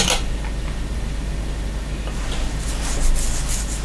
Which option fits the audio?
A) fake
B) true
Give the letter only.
B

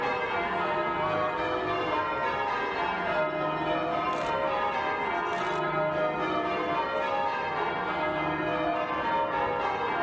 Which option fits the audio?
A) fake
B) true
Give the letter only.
B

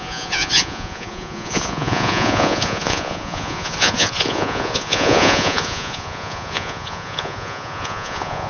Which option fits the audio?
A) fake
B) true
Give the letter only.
A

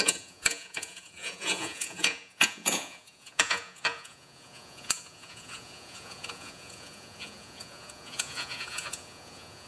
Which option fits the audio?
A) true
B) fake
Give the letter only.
B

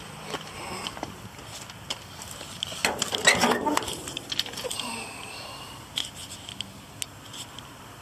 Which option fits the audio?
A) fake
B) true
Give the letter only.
B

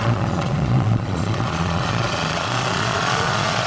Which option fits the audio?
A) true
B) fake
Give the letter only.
B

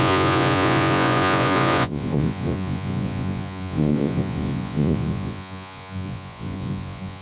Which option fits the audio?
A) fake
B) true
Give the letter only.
A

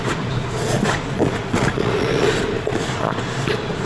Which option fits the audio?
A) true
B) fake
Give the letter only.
B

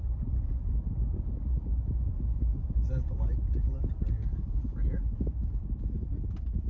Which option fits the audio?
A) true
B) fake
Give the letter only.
A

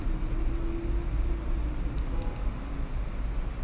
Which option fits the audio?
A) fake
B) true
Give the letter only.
B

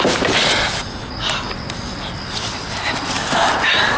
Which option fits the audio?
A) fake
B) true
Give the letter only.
B